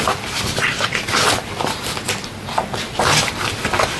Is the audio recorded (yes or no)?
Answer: yes